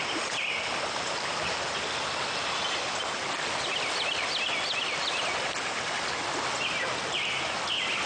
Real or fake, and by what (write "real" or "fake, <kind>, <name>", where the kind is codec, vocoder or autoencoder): real